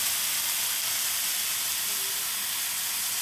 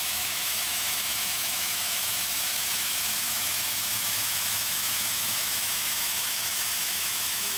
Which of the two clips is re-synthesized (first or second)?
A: second